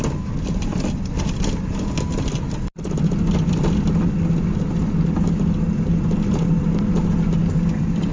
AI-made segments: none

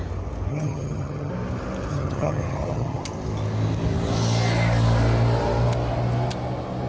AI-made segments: 0.5-1.3; 1.9-3.0

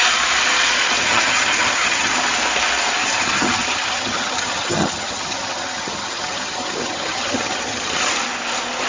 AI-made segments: 1.0-2.1; 3.0-8.1

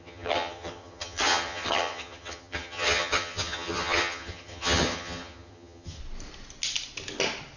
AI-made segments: 0.0-6.0

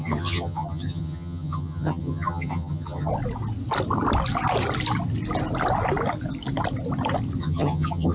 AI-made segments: 0.0-3.1; 7.4-8.1

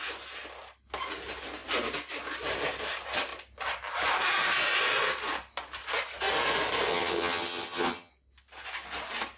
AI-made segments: 6.9-8.1